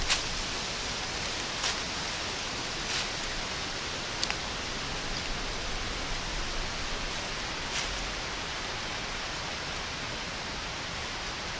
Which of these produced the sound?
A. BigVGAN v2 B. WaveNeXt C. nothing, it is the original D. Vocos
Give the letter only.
C